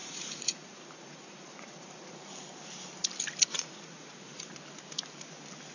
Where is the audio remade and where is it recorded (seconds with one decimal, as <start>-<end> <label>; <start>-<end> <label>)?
0.0-2.3 remade; 2.3-3.5 recorded; 3.5-4.5 remade; 4.5-5.7 recorded